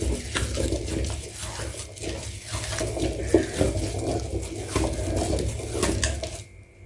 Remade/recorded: recorded